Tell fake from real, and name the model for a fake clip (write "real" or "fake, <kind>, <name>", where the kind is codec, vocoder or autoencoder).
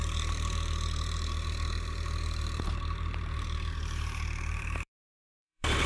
fake, vocoder, BigVGAN v2